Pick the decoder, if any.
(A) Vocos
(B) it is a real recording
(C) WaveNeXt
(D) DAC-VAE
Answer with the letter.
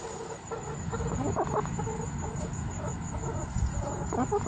B